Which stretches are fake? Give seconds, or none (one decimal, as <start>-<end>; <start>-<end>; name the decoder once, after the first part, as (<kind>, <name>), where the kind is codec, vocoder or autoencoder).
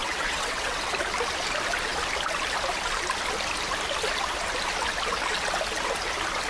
0.0-0.9 (vocoder, WaveNeXt)